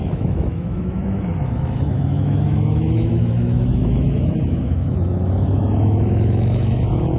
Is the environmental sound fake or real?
fake